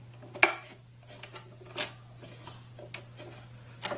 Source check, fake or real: real